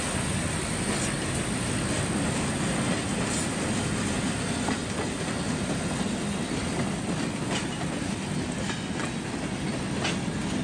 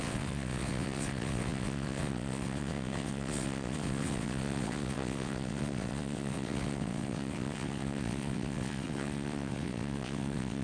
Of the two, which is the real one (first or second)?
first